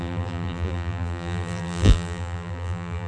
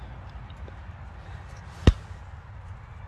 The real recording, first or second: second